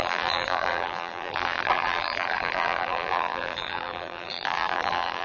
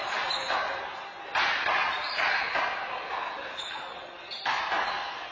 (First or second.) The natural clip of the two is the second